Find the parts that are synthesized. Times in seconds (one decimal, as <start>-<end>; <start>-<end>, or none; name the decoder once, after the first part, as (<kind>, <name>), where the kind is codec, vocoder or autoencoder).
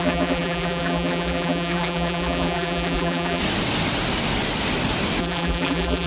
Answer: 0.0-3.4 (vocoder, BigVGAN v2); 5.2-6.1